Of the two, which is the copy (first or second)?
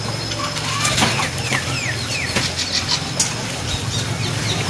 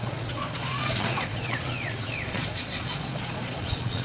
second